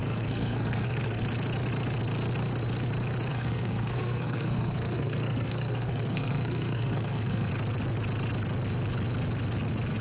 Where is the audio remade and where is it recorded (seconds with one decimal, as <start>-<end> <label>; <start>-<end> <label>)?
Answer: 0.0-1.2 remade; 1.2-3.3 recorded; 3.3-7.5 remade; 7.5-10.0 recorded